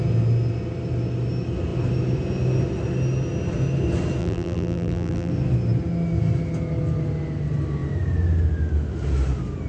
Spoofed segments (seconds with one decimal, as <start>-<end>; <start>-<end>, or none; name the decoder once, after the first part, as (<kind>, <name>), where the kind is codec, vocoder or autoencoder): 4.2-5.3 (vocoder, BigVGAN v2)